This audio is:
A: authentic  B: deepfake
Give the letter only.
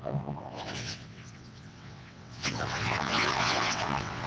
B